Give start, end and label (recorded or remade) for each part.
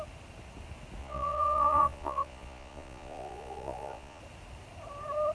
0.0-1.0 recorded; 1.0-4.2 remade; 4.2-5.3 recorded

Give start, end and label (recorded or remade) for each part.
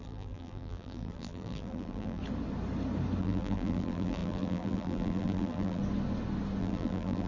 0.0-2.2 remade; 2.2-3.2 recorded; 3.2-5.8 remade; 5.8-6.6 recorded; 6.6-7.3 remade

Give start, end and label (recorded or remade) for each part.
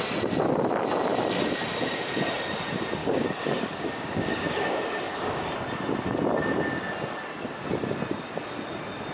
0.0-3.0 recorded; 3.0-5.5 remade; 5.5-9.1 recorded